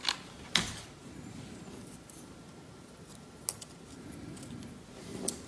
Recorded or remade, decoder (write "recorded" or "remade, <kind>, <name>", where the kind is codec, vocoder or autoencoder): recorded